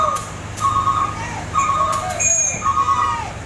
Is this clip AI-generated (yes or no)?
no